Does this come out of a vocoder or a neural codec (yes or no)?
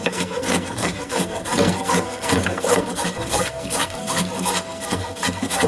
yes